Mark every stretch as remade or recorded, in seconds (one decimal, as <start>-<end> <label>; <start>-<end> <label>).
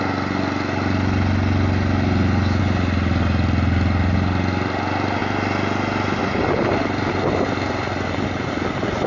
0.0-9.1 recorded